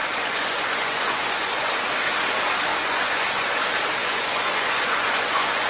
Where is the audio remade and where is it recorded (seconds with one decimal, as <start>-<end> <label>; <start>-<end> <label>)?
0.0-1.7 remade; 1.7-2.7 recorded; 2.7-3.5 remade; 3.5-4.0 recorded; 4.0-5.7 remade